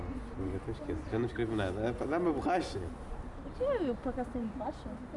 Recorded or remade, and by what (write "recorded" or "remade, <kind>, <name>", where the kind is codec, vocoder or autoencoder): recorded